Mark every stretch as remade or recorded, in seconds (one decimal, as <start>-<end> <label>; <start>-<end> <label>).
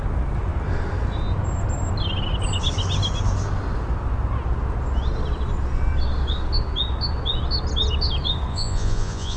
0.0-8.5 recorded; 8.5-9.4 remade